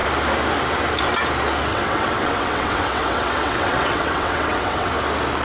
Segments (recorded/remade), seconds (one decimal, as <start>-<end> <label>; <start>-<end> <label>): 0.0-1.7 recorded; 1.7-4.9 remade; 4.9-5.4 recorded